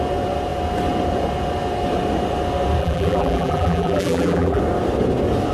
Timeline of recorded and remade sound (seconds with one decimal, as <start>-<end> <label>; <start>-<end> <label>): 0.0-2.8 recorded; 2.8-4.6 remade; 4.6-5.5 recorded